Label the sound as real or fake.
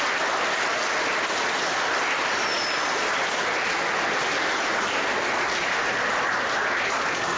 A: real